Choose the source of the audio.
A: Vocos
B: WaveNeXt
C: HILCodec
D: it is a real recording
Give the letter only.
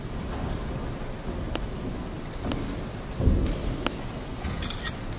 D